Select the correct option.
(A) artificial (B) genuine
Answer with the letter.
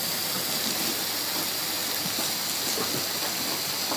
B